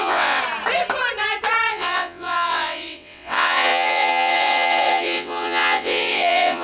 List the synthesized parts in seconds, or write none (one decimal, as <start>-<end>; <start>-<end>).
0.0-0.4; 1.7-6.6